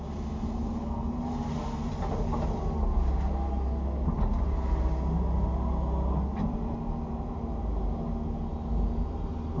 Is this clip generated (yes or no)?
no